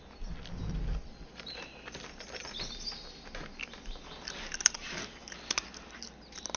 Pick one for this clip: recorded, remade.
recorded